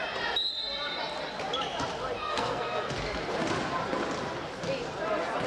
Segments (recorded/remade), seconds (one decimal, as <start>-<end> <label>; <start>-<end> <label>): 0.0-2.2 recorded; 2.2-2.9 remade; 2.9-5.5 recorded